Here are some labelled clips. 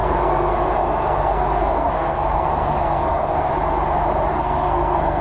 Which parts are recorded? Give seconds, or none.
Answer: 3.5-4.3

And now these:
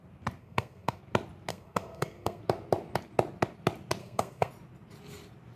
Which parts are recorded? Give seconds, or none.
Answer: 0.0-0.4; 1.0-1.5; 2.4-4.0; 4.5-5.6